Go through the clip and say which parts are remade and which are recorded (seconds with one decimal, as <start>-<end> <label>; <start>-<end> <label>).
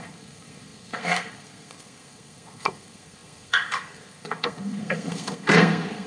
0.0-6.1 remade